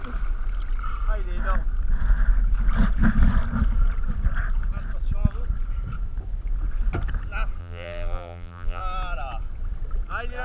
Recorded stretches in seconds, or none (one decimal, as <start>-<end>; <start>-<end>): 0.0-7.6; 8.8-10.4